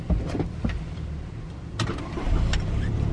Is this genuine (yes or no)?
yes